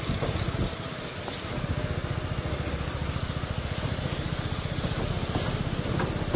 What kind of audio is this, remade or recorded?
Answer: recorded